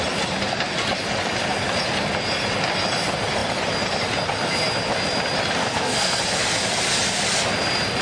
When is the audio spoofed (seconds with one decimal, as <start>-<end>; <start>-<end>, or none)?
5.6-6.2